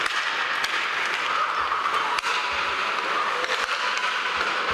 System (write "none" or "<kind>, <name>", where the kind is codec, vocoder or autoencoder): none